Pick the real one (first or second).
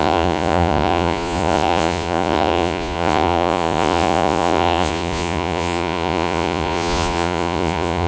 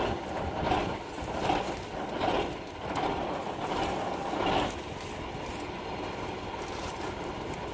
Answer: second